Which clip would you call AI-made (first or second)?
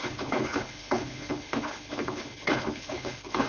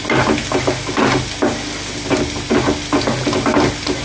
first